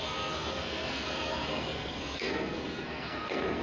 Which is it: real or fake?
fake